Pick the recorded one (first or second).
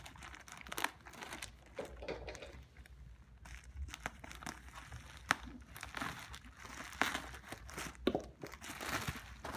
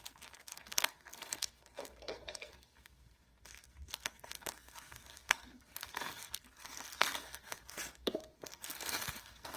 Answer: first